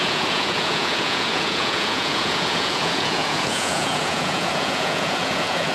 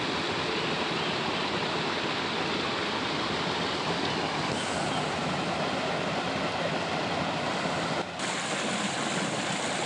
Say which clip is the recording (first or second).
second